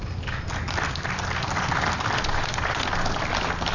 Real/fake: real